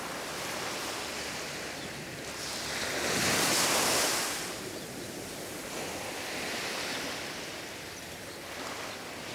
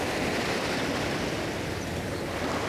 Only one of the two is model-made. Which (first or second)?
first